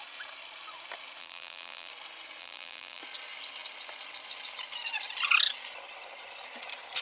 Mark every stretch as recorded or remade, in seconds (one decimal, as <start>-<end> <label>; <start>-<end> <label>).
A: 0.0-1.2 recorded; 1.2-1.9 remade; 1.9-2.4 recorded; 2.4-3.0 remade; 3.0-7.0 recorded